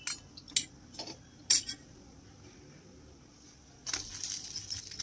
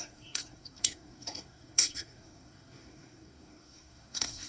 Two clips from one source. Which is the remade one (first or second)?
second